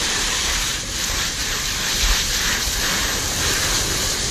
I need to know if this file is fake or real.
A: fake